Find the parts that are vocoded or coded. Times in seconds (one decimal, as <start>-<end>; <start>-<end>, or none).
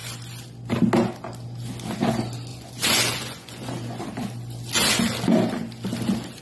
2.5-4.0